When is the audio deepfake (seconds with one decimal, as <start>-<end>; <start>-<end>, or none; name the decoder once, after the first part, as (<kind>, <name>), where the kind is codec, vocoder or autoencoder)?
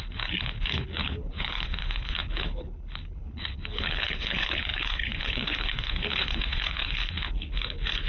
0.0-8.1 (codec, HILCodec)